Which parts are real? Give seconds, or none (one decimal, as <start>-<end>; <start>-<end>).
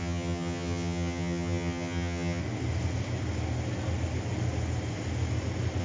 2.4-5.8